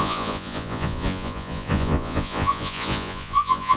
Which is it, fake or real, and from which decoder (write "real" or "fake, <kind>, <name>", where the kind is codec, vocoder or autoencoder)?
fake, vocoder, Vocos